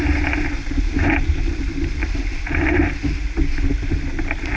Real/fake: real